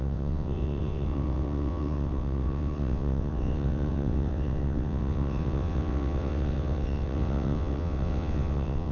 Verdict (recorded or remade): remade